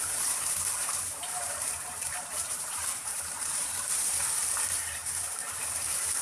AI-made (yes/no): yes